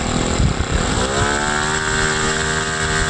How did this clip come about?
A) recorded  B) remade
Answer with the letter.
A